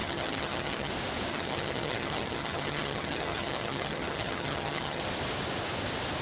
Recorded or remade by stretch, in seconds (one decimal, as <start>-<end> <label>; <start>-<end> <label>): 0.0-0.9 remade; 0.9-1.3 recorded; 1.3-5.0 remade; 5.0-6.2 recorded